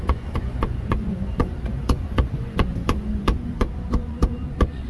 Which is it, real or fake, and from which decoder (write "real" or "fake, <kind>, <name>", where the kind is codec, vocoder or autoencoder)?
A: fake, vocoder, Vocos